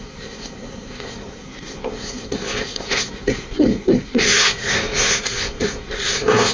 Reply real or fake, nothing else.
fake